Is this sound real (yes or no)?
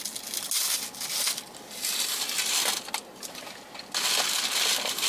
yes